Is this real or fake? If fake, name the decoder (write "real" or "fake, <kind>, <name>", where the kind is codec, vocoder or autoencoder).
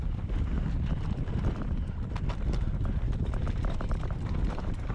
fake, vocoder, BigVGAN v2